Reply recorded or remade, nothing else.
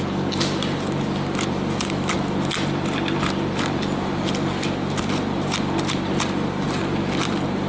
recorded